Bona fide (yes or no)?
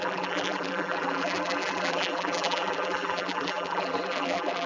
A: no